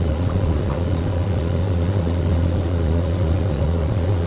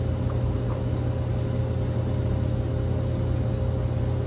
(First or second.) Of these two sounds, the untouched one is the second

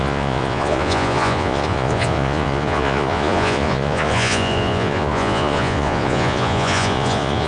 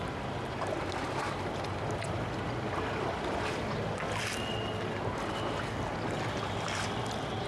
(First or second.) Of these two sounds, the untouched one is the second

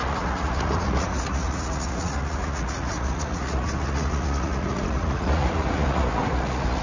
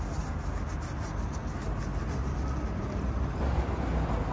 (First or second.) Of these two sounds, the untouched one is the second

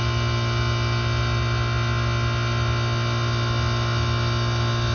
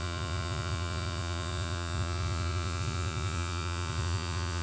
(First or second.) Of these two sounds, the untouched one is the first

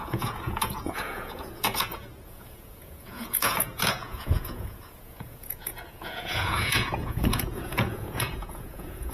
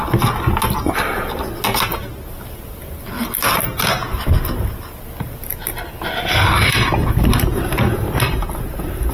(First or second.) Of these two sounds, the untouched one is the second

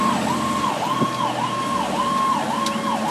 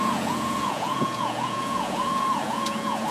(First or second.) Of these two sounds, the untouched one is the first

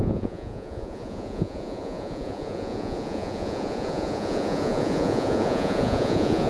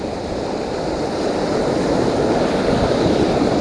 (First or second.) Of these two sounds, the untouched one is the second